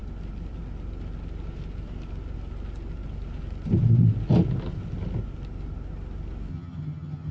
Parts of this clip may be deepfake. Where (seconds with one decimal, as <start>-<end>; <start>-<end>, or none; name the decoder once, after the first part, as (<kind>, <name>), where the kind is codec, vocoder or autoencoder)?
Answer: 6.5-7.3 (vocoder, HiFi-GAN)